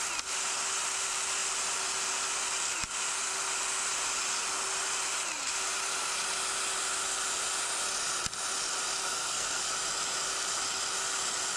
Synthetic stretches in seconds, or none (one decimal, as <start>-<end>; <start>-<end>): 9.0-9.6